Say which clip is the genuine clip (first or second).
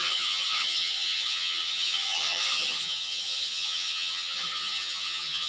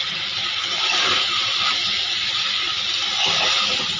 second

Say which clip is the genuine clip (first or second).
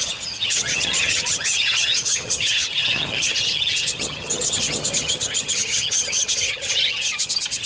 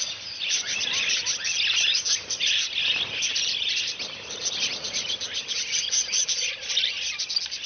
second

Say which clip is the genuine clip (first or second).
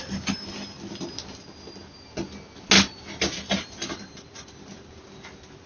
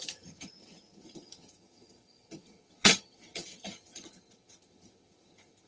first